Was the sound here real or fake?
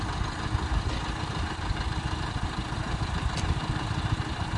real